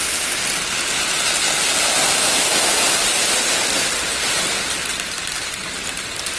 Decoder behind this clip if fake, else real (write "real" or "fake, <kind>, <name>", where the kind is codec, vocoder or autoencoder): real